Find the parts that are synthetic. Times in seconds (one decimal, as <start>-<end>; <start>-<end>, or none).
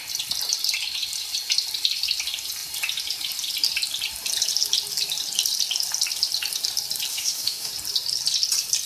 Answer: 7.1-7.7